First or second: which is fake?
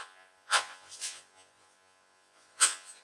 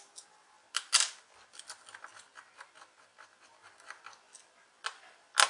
first